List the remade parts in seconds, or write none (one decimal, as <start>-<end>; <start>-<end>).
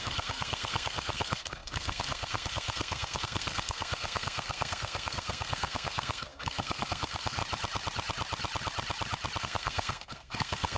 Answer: 0.0-7.4; 9.4-10.8